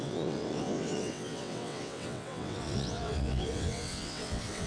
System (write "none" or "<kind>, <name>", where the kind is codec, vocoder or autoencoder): vocoder, WaveNeXt